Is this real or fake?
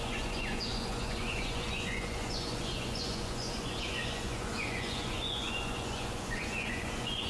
fake